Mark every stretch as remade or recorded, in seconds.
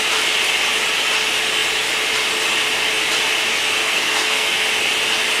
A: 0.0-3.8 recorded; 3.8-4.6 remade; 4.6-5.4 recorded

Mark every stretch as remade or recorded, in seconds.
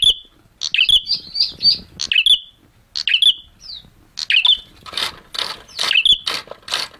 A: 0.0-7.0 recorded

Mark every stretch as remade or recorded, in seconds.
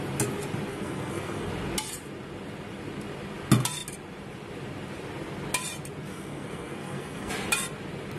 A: 0.0-0.7 recorded; 0.7-1.5 remade; 1.5-6.1 recorded; 6.1-7.3 remade; 7.3-8.2 recorded